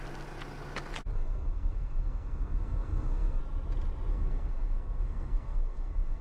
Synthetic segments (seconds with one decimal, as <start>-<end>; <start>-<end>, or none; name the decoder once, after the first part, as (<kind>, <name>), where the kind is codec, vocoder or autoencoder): 1.1-3.4 (codec, SNAC); 4.1-6.2